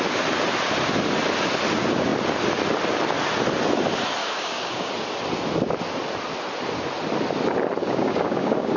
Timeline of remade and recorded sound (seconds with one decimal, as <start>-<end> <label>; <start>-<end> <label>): 0.0-4.2 recorded; 4.2-4.9 remade; 4.9-7.8 recorded; 7.8-8.8 remade